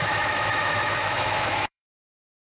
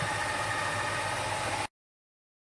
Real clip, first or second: second